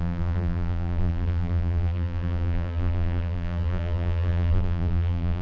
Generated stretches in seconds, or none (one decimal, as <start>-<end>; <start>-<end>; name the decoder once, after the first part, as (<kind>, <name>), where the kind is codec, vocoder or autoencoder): 0.0-5.4 (vocoder, BigVGAN v2)